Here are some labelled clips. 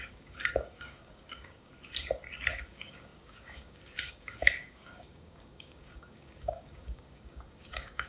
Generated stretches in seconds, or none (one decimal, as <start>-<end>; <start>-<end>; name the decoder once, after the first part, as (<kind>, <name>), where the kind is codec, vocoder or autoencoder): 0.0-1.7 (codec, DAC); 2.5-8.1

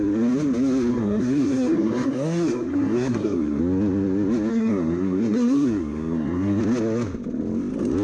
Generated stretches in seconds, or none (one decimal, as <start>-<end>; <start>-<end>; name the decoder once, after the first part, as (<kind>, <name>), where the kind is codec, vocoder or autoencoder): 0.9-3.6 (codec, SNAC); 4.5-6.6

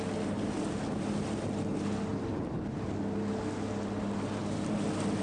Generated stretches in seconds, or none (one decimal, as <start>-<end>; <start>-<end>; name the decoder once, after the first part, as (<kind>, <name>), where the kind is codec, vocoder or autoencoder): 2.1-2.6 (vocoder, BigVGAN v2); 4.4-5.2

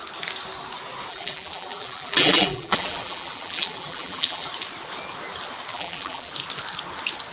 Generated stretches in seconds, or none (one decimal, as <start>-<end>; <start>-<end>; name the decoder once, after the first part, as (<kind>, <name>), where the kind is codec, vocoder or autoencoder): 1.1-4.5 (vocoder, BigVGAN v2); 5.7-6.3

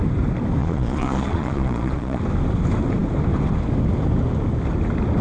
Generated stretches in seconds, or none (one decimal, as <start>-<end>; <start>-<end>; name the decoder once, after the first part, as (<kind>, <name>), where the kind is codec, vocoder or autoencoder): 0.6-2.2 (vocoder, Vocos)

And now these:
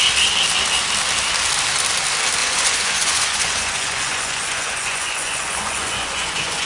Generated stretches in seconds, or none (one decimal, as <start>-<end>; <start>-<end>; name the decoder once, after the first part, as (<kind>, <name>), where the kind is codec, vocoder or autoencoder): 2.4-6.7 (vocoder, Vocos)